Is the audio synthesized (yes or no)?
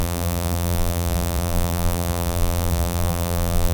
yes